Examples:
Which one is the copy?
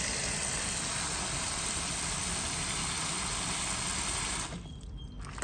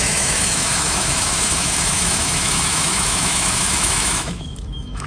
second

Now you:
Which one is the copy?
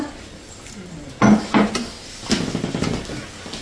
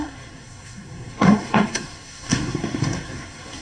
second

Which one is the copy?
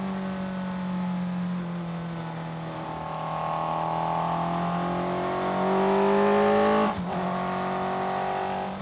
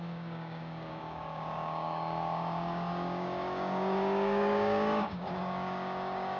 second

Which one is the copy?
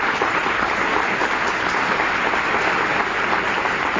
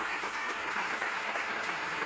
second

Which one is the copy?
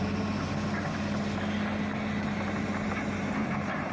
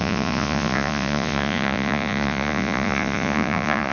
second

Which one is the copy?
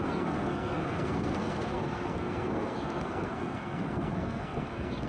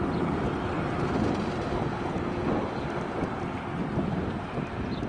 first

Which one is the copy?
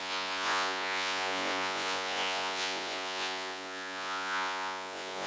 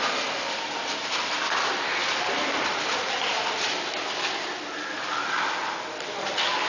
first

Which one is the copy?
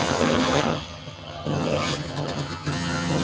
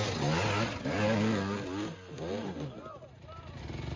first